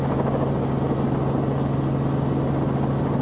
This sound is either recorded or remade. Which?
recorded